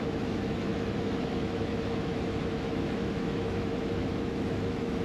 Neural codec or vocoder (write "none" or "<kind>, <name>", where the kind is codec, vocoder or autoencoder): autoencoder, DAC-VAE